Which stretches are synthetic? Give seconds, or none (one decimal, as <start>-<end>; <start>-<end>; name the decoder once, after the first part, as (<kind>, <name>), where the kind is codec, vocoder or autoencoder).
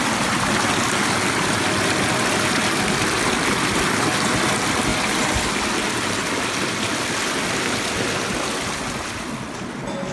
none